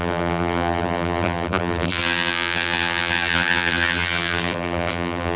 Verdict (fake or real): fake